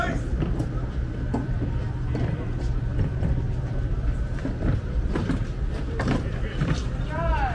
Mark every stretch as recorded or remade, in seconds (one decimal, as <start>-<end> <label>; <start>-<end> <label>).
0.0-7.5 remade